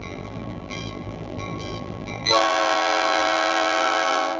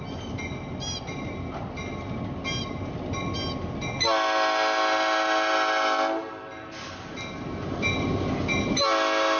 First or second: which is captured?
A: second